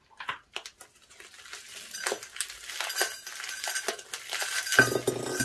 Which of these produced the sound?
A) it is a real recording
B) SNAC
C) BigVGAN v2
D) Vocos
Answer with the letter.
A